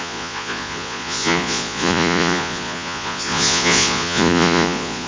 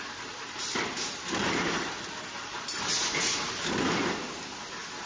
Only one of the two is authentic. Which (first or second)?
second